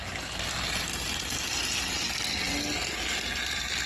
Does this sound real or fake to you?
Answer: real